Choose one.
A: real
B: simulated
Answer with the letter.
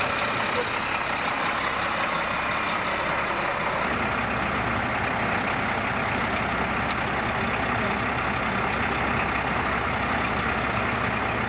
A